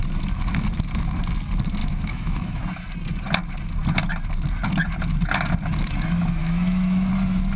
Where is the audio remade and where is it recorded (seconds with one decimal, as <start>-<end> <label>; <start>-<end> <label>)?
0.0-1.8 recorded; 1.8-2.6 remade; 2.6-6.4 recorded; 6.4-7.1 remade; 7.1-7.6 recorded